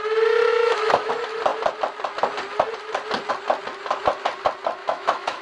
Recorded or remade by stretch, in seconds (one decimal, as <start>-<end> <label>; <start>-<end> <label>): 0.0-0.5 recorded; 0.5-1.1 remade; 1.1-4.8 recorded; 4.8-5.4 remade

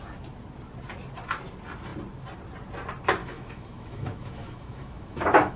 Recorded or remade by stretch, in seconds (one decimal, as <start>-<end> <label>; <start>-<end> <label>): 0.0-3.2 recorded; 3.2-5.6 remade

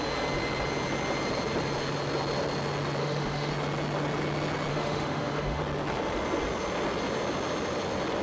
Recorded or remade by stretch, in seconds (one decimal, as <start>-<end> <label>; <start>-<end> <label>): 0.0-3.0 recorded; 3.0-3.5 remade; 3.5-4.7 recorded; 4.7-5.6 remade; 5.6-8.2 recorded

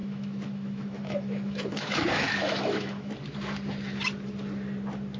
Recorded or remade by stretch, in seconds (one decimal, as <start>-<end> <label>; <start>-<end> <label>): 0.0-3.1 remade; 3.1-5.2 recorded

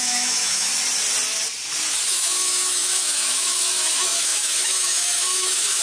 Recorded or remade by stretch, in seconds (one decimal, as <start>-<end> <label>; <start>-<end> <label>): 0.0-0.7 remade; 0.7-2.1 recorded; 2.1-5.8 remade